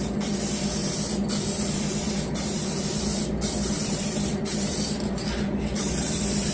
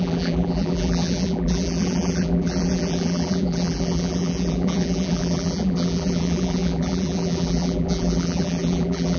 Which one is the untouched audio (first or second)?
first